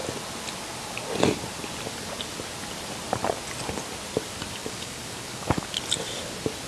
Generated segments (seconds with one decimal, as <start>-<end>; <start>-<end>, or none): 4.6-5.8